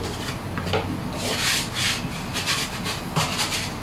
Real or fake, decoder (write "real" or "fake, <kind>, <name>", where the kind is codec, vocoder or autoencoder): real